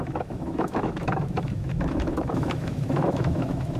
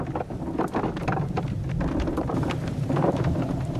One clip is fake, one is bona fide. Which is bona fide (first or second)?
second